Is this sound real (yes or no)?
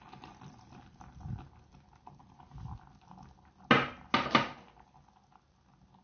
yes